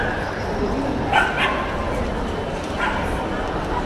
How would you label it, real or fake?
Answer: real